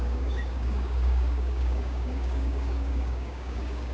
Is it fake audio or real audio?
fake